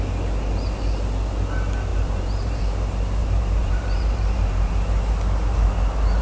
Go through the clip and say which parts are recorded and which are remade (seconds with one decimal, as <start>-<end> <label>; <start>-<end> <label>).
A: 0.0-1.9 recorded; 1.9-2.6 remade; 2.6-3.2 recorded; 3.2-4.7 remade; 4.7-6.2 recorded